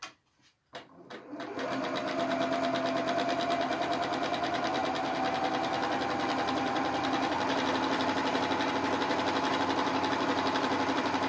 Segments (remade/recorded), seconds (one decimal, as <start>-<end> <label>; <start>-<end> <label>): 0.0-11.3 recorded